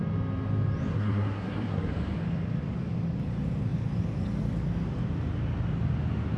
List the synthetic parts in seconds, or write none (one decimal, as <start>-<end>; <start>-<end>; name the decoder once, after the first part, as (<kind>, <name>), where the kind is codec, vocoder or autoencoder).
0.9-1.9 (codec, SNAC)